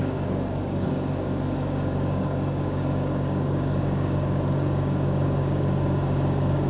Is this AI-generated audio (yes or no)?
yes